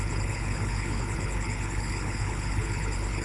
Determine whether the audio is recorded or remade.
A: remade